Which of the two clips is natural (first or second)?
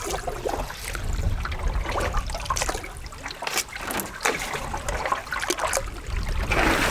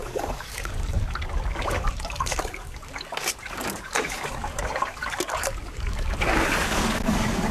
first